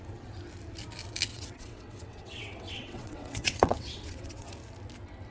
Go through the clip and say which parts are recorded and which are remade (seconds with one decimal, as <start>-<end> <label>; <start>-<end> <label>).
0.0-1.3 recorded; 1.3-4.5 remade; 4.5-5.3 recorded